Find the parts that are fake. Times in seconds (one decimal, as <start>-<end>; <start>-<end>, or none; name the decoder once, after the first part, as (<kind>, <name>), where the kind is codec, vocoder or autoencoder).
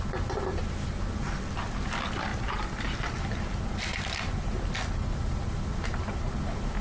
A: none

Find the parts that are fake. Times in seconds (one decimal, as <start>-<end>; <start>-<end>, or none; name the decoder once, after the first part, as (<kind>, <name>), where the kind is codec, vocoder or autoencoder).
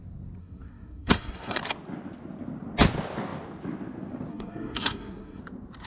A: 0.4-1.6 (codec, SNAC); 4.3-5.4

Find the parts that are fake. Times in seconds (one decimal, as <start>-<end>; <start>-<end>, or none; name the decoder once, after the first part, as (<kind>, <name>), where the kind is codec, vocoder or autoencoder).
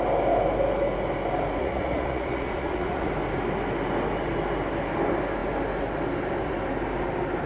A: 1.6-3.1 (vocoder, Vocos)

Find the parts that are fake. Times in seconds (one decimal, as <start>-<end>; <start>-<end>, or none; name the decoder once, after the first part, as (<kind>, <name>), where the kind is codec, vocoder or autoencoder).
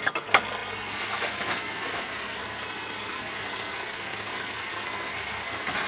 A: 0.0-5.9 (codec, SNAC)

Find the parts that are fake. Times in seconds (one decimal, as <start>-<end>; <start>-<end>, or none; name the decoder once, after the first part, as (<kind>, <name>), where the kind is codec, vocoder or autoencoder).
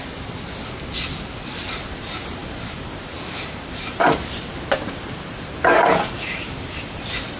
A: 1.6-7.4 (vocoder, BigVGAN v2)